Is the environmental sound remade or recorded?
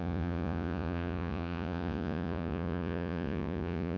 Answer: remade